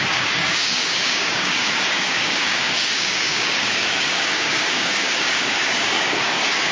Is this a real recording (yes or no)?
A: no